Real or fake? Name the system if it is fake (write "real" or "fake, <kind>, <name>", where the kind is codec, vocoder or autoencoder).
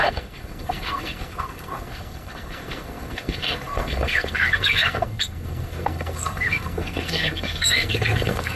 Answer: fake, codec, SNAC